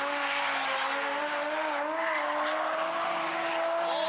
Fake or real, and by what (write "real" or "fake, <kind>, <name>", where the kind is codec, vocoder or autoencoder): real